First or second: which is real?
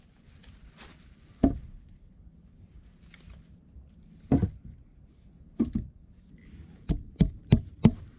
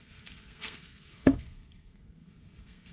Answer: first